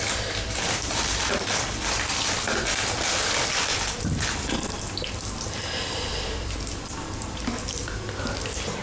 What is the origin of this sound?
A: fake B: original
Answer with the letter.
A